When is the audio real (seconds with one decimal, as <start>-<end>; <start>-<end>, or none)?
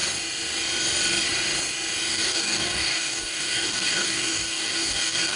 0.0-2.1